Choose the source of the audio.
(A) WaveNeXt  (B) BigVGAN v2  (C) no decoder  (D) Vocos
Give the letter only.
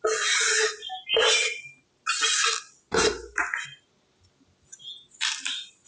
C